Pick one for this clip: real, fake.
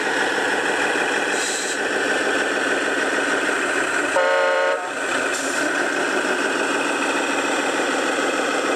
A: fake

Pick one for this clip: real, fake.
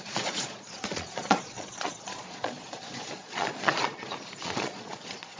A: fake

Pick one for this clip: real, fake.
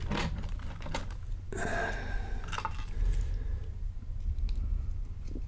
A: real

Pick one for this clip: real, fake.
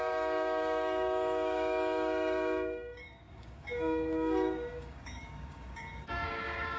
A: fake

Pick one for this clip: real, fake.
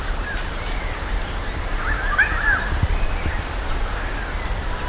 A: real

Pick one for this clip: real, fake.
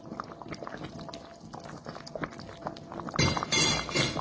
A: real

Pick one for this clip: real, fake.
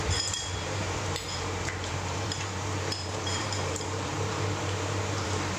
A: fake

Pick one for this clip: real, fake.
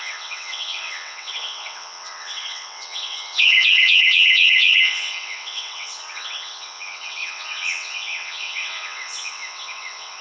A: fake